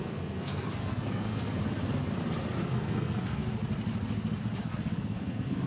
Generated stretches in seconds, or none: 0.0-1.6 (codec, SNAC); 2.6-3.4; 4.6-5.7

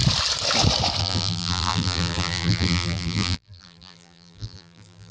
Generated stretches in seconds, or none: 1.0-5.1 (vocoder, BigVGAN v2)

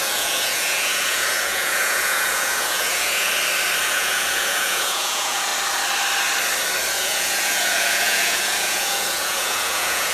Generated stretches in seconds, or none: 0.0-3.3 (vocoder, Vocos); 3.8-5.5; 6.9-10.1

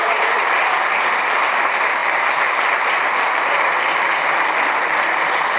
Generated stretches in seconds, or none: 0.0-1.4 (vocoder, BigVGAN v2)

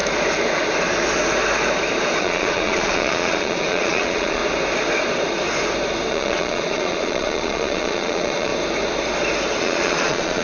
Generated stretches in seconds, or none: 2.2-4.4 (vocoder, Vocos); 6.1-8.5; 9.6-10.4

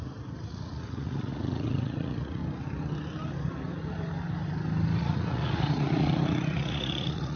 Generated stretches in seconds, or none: 0.5-2.4 (vocoder, Vocos); 5.0-7.4